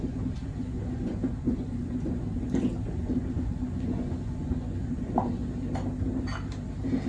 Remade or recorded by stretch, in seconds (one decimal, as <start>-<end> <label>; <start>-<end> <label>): 0.0-5.4 remade; 5.4-7.1 recorded